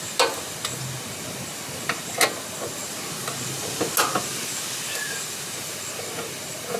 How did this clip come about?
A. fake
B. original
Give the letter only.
B